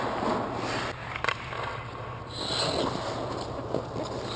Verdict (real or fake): real